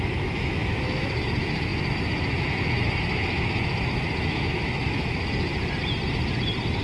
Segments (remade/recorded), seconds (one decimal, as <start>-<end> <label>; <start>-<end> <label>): 0.0-5.5 remade; 5.5-6.8 recorded